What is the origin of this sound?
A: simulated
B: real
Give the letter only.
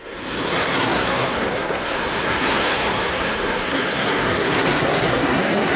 A